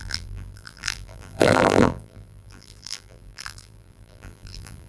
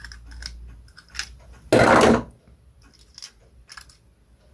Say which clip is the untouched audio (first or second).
second